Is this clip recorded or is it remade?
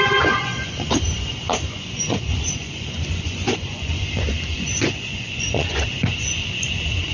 remade